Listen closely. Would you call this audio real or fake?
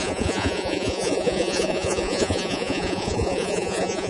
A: fake